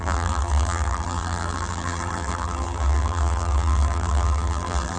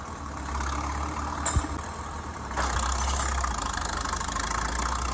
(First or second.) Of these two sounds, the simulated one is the first